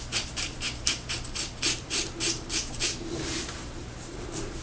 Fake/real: fake